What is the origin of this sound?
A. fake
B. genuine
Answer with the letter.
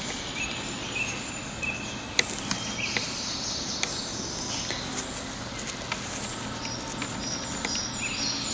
B